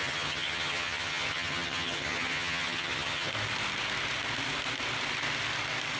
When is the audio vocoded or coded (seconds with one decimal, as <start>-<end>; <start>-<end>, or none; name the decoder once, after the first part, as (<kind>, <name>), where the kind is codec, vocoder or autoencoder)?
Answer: 0.0-3.3 (vocoder, HiFi-GAN)